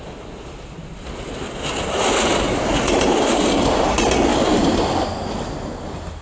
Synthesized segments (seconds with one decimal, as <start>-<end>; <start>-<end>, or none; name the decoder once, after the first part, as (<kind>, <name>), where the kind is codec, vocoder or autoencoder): none